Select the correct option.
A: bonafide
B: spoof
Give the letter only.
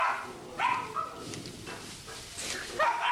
A